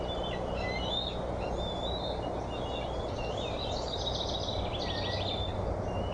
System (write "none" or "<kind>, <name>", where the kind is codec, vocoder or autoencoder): none